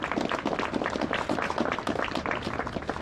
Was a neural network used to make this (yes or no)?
no